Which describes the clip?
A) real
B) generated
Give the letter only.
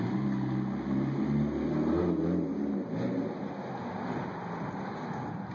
A